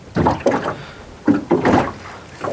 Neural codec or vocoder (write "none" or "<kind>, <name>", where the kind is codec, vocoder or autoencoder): none